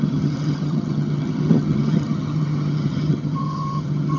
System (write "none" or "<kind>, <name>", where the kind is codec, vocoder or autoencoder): vocoder, HiFi-GAN